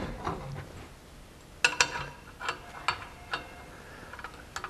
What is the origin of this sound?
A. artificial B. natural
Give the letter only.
B